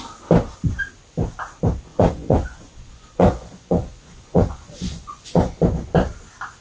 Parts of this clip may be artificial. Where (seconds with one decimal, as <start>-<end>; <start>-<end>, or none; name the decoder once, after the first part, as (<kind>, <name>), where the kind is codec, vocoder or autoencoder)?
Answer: 1.9-5.6 (vocoder, Vocos)